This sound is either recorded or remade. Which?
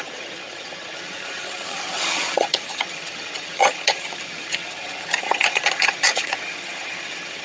remade